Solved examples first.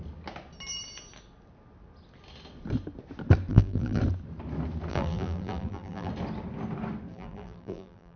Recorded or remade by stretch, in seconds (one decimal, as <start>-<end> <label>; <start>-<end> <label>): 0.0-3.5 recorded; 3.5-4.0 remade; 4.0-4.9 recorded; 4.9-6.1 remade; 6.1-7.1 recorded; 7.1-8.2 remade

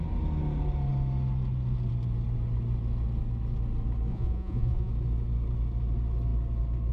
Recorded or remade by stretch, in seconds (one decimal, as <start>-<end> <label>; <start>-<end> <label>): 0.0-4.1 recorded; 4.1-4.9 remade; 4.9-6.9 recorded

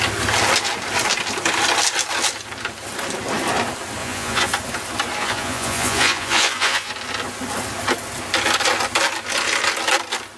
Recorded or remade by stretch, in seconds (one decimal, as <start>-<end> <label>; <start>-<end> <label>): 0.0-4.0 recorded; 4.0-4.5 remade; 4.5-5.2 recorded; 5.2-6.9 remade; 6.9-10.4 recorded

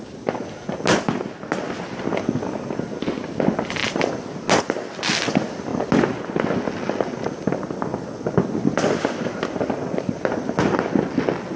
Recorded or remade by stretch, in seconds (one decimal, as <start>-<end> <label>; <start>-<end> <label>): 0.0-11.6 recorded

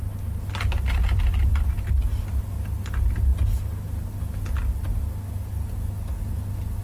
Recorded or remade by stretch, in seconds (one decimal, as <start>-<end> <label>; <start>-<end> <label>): 0.0-6.8 recorded